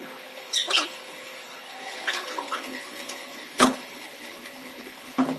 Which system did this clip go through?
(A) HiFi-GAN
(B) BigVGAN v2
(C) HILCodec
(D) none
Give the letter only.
C